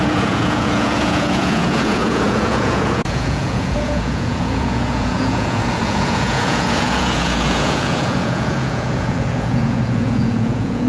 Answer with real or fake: fake